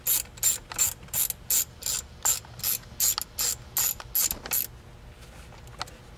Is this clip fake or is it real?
real